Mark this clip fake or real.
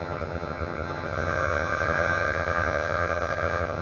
fake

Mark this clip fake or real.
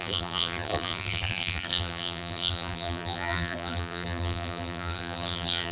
fake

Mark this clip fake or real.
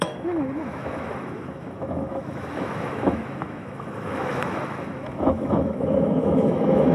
fake